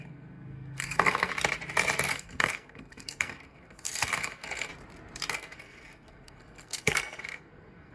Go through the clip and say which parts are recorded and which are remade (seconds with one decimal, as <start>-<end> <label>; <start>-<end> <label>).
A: 0.0-1.3 remade; 1.3-2.1 recorded; 2.1-4.7 remade; 4.7-5.3 recorded; 5.3-7.9 remade